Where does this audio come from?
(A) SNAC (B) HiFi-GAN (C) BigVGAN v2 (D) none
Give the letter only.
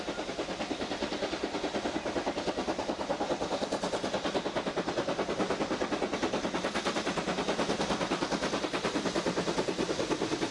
D